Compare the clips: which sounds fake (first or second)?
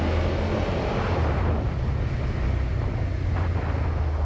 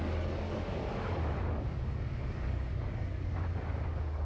second